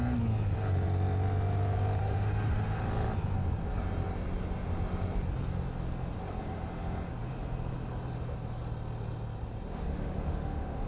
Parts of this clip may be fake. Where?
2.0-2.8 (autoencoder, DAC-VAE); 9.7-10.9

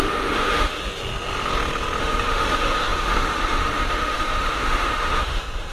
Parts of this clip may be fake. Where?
0.0-0.8 (autoencoder, DAC-VAE); 2.0-5.7